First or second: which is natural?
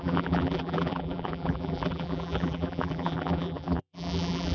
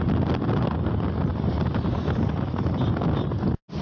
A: second